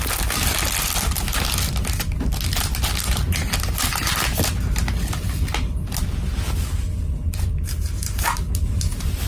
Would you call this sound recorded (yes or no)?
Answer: yes